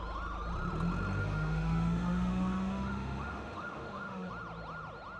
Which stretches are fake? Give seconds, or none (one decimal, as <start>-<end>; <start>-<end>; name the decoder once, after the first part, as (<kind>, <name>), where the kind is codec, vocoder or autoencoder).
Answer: 1.2-4.3 (autoencoder, DAC-VAE)

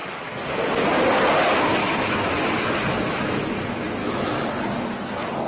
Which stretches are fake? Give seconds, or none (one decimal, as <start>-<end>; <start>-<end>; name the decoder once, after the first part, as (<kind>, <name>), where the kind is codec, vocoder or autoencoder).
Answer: 1.8-3.5 (autoencoder, DAC-VAE); 4.0-4.6

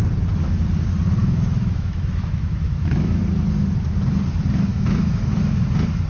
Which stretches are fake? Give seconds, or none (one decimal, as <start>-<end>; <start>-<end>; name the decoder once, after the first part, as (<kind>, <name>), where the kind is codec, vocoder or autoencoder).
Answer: 1.2-3.2 (autoencoder, DAC-VAE); 4.7-5.4

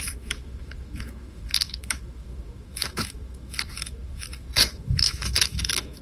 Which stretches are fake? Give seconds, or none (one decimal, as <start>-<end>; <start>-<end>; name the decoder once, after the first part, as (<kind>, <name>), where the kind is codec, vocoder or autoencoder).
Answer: 0.0-6.0 (autoencoder, DAC-VAE)

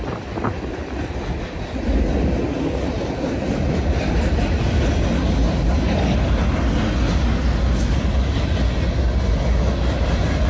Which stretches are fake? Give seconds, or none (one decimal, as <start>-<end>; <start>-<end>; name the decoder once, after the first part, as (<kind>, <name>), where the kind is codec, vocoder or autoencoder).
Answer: none

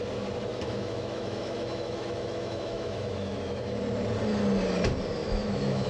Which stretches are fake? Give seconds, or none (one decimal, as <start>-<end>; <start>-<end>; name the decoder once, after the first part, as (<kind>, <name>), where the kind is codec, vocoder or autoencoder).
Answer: 0.5-3.8 (autoencoder, DAC-VAE); 5.2-5.9

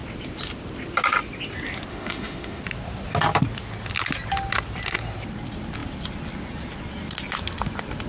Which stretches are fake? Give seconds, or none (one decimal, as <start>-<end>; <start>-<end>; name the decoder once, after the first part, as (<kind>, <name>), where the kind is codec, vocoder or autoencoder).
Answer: 1.9-2.6 (autoencoder, DAC-VAE)